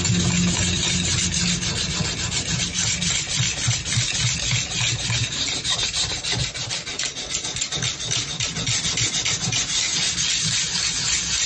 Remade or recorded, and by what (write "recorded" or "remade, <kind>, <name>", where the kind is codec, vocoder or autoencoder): recorded